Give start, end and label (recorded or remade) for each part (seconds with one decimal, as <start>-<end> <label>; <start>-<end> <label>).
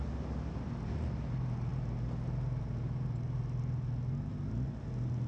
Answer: 0.0-5.3 recorded